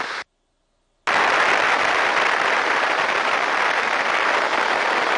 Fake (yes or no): no